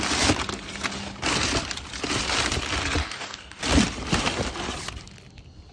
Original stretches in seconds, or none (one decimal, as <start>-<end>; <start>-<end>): 0.0-3.0; 3.6-5.7